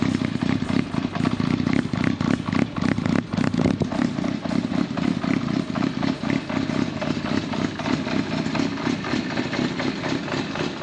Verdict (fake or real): real